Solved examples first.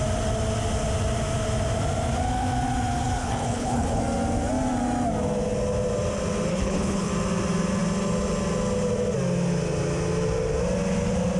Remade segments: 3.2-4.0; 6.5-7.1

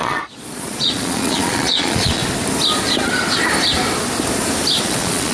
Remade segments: 0.0-2.2; 4.8-5.3

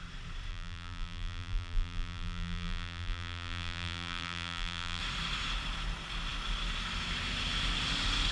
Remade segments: 0.5-5.0

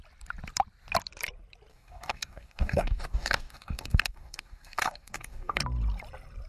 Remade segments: 1.7-5.6

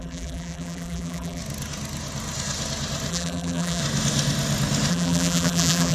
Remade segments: 0.0-1.4; 3.1-3.8; 4.9-5.9

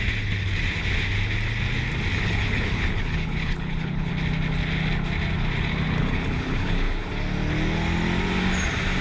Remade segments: 2.1-4.1; 6.0-7.1

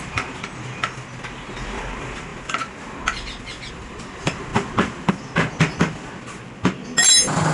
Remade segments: none